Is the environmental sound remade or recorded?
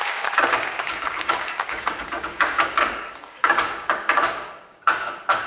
remade